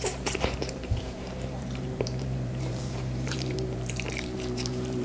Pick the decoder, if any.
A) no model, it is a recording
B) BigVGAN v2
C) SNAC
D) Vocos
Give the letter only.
B